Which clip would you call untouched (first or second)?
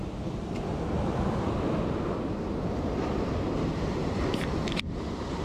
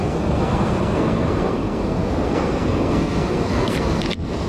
first